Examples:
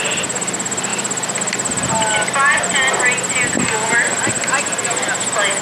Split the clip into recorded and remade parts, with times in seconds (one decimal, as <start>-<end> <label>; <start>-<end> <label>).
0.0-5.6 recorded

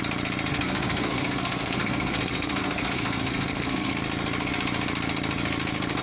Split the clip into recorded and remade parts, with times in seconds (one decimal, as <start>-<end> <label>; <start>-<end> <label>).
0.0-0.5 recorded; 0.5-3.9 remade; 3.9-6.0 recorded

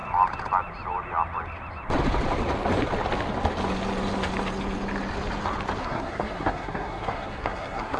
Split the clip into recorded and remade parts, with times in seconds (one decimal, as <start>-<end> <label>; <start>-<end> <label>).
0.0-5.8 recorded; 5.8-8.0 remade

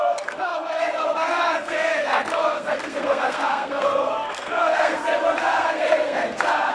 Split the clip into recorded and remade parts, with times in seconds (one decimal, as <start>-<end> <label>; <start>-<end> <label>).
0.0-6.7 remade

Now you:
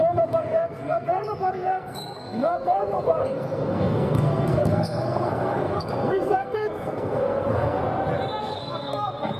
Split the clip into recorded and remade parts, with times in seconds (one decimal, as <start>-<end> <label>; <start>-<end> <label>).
0.0-7.8 remade; 7.8-8.4 recorded; 8.4-9.4 remade